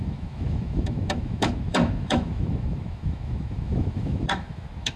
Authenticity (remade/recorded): remade